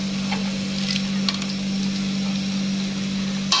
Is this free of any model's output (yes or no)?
yes